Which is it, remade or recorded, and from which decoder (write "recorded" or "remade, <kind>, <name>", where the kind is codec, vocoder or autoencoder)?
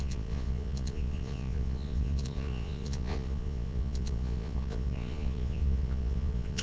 remade, vocoder, Vocos